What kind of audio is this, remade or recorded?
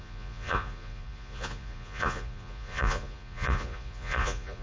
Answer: remade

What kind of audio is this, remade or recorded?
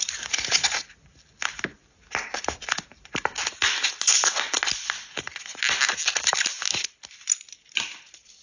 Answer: recorded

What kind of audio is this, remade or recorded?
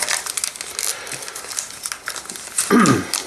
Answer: recorded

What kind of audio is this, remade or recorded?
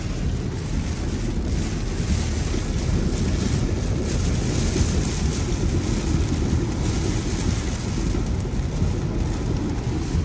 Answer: recorded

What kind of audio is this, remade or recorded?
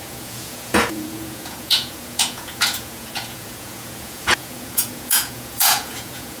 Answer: remade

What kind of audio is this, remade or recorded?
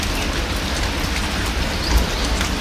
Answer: recorded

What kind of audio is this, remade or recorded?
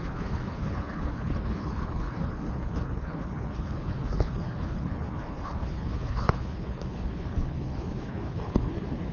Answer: remade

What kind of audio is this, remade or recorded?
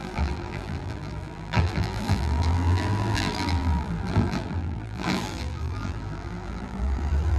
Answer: remade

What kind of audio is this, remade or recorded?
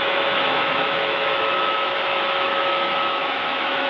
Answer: remade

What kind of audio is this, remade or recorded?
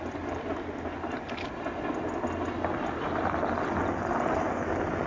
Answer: recorded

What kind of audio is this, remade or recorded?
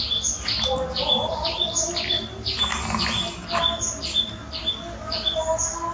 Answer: recorded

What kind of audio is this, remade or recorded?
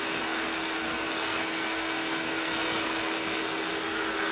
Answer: remade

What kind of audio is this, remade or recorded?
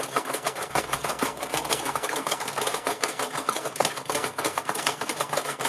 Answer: remade